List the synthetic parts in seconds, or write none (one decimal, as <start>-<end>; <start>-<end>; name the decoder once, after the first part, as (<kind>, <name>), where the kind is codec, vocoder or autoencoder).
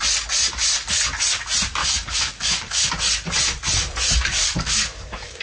1.8-2.9 (codec, DAC); 4.3-5.4